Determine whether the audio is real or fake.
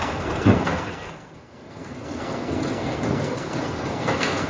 fake